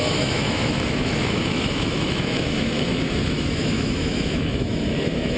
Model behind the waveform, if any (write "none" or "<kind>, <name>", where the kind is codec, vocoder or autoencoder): autoencoder, DAC-VAE